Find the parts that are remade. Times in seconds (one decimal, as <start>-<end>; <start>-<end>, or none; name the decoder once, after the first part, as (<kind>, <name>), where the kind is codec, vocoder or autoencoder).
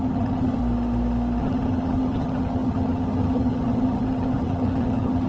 0.0-0.6 (vocoder, HiFi-GAN); 1.4-5.3